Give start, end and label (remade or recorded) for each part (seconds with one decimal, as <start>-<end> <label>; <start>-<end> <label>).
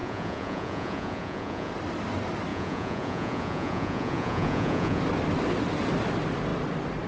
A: 0.0-1.7 remade; 1.7-2.5 recorded; 2.5-5.0 remade; 5.0-7.1 recorded